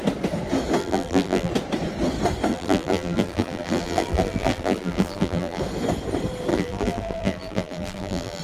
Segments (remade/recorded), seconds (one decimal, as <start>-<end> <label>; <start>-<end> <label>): 0.0-0.8 recorded; 0.8-1.5 remade; 1.5-2.5 recorded; 2.5-5.6 remade; 5.6-6.5 recorded; 6.5-8.4 remade